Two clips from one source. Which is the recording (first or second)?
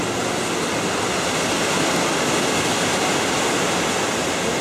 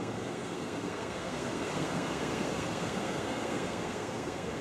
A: first